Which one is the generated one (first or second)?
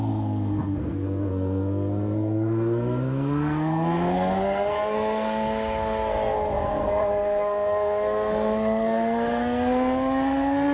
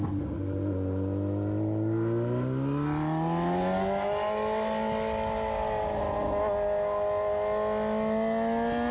first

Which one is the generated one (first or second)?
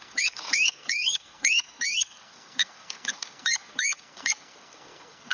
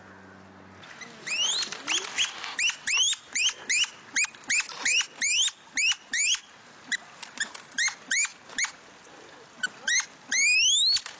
first